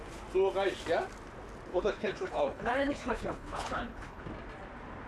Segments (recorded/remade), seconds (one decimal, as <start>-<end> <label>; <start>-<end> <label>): 0.0-1.7 recorded; 1.7-4.2 remade; 4.2-5.1 recorded